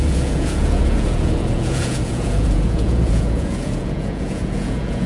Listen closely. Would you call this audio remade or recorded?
remade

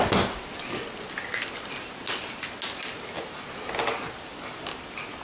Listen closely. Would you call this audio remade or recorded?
recorded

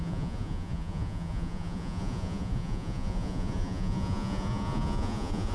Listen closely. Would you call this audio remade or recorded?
remade